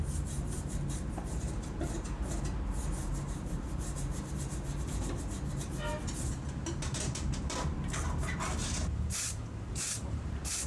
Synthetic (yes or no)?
yes